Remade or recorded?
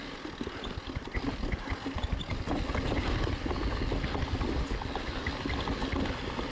recorded